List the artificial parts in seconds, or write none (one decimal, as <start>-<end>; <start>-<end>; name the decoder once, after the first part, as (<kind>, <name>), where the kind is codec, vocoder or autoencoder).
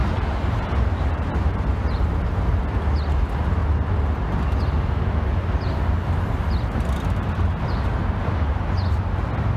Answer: 0.0-2.6 (vocoder, BigVGAN v2)